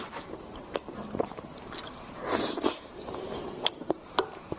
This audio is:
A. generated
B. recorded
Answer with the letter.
A